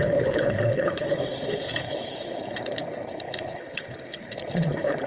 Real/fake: fake